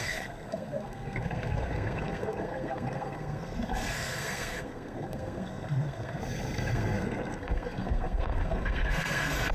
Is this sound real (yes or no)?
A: no